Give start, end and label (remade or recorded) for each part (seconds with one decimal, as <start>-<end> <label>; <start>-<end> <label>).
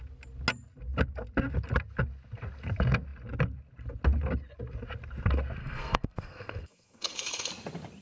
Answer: 0.0-5.6 recorded; 5.6-7.5 remade; 7.5-8.0 recorded